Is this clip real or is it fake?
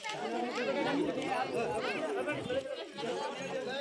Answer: real